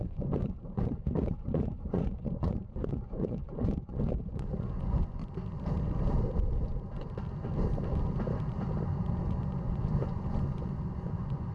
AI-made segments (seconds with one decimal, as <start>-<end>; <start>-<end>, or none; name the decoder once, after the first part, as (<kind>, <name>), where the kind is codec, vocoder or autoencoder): 0.0-5.2 (vocoder, Vocos); 9.1-11.5